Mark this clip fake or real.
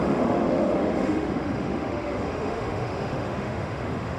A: fake